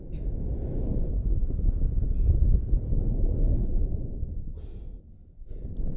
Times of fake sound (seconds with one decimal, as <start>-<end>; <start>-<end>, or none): 0.9-1.8; 2.9-3.8